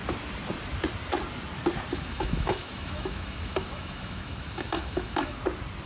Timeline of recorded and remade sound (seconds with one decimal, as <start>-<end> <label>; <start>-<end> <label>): 0.0-1.9 recorded; 1.9-5.4 remade; 5.4-5.9 recorded